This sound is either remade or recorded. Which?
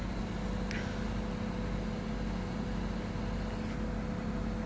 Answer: recorded